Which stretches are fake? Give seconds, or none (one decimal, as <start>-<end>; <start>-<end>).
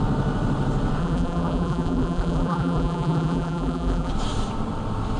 1.0-4.1